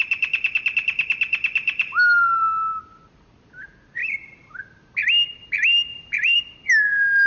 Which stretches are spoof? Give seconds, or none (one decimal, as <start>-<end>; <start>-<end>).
4.0-4.6; 5.9-6.4